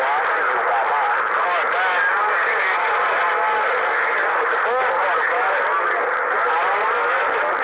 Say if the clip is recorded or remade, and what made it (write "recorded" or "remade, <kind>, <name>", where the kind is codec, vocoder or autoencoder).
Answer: recorded